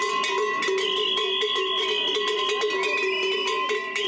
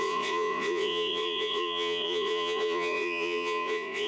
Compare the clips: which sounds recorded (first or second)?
first